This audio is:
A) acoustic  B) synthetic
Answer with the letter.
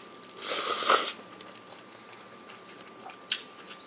A